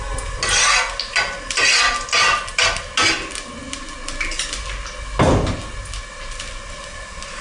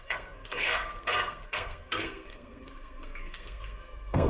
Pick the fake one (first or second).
second